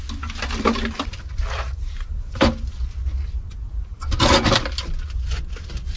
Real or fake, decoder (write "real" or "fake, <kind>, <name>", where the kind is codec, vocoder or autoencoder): real